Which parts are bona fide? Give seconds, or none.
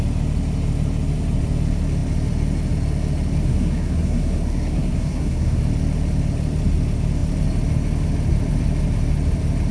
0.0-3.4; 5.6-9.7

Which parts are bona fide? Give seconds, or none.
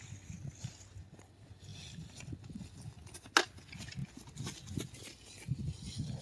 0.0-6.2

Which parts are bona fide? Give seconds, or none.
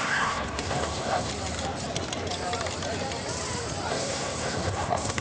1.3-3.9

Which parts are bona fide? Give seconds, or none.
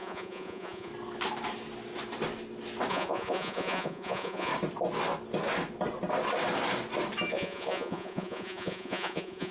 0.9-2.9; 4.5-7.3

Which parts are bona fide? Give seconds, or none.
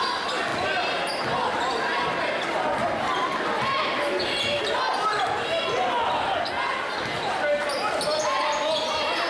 0.0-9.3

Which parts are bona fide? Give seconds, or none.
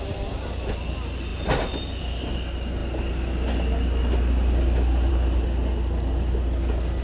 0.0-7.0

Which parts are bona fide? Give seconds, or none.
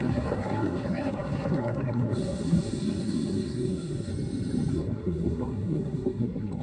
4.1-4.7